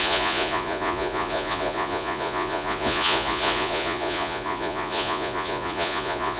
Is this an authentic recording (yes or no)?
no